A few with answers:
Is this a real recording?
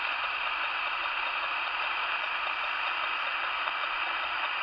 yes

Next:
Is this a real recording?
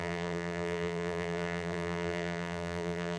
no